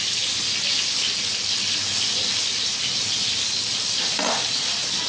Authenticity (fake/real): real